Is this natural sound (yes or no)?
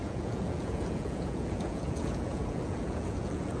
no